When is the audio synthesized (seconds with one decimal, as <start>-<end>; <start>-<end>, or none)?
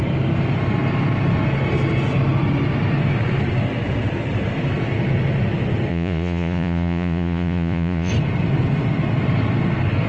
5.9-8.1